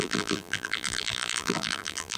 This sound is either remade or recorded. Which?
remade